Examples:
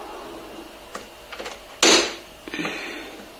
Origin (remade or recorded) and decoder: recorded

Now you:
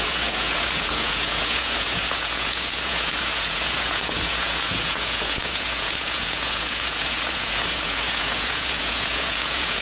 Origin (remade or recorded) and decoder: remade, vocoder, Vocos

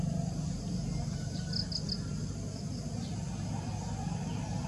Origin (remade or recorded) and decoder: recorded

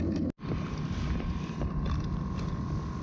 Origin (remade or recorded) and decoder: recorded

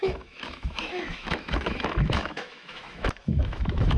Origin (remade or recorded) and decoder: remade, autoencoder, DAC-VAE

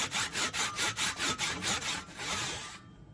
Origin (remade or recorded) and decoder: remade, vocoder, BigVGAN v2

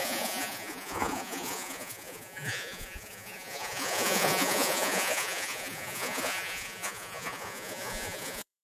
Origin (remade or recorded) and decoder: remade, vocoder, Vocos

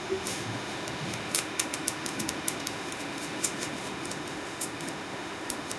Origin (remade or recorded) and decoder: remade, autoencoder, DAC-VAE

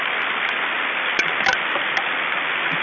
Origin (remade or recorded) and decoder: recorded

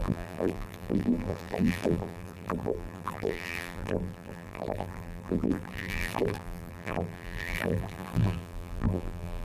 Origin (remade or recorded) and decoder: remade, vocoder, BigVGAN v2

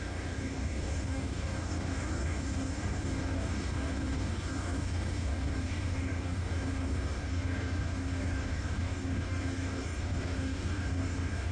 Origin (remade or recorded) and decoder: remade, codec, DAC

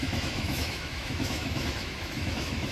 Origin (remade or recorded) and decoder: remade, autoencoder, DAC-VAE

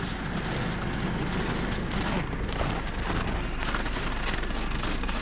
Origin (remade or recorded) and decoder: recorded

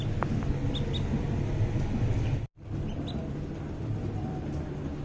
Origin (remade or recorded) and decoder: recorded